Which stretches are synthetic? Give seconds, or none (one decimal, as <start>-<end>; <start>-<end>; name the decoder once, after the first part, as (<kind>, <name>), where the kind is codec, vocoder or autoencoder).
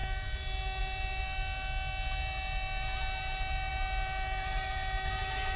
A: none